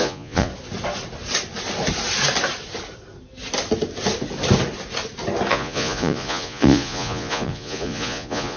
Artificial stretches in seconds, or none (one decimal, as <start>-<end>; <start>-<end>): 0.0-0.5; 5.5-8.6